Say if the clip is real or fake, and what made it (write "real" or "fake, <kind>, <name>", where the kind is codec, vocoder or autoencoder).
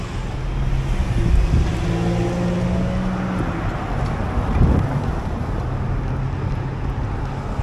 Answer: real